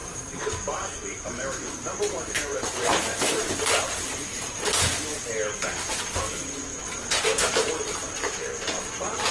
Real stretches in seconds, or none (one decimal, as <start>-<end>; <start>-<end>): 3.5-6.7; 8.9-9.3